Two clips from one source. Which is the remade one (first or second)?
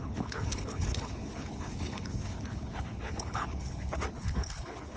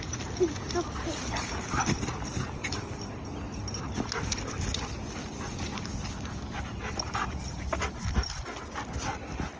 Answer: first